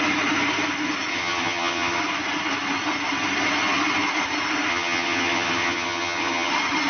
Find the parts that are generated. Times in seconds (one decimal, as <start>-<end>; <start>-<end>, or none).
1.1-2.0; 4.7-6.5